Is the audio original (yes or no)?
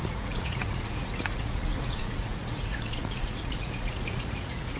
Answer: no